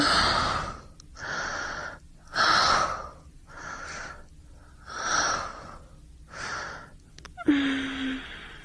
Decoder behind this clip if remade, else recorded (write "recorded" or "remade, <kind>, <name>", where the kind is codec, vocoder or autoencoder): recorded